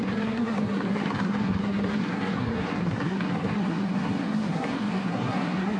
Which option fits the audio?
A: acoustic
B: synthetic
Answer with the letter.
B